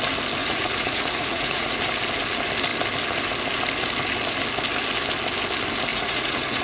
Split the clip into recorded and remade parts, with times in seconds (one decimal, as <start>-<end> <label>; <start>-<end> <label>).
0.0-0.4 recorded; 0.4-1.8 remade; 1.8-5.9 recorded; 5.9-6.6 remade